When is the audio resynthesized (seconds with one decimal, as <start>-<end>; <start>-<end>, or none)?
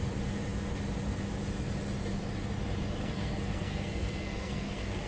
3.0-5.1